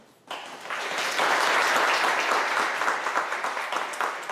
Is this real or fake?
real